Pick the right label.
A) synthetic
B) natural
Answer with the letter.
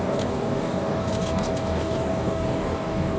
A